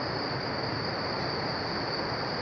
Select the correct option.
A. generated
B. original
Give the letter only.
B